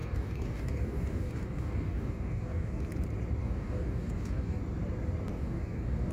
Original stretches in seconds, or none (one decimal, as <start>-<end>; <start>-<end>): 2.8-3.4; 4.6-5.3